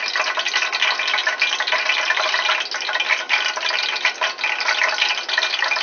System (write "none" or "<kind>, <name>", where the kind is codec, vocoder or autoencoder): none